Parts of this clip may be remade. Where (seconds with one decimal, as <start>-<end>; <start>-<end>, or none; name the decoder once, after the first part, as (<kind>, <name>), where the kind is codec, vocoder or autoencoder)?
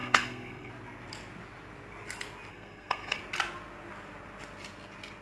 0.0-0.7 (codec, SNAC); 2.5-3.2